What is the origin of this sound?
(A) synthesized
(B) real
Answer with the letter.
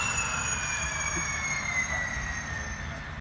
B